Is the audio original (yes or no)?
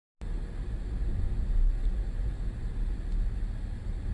yes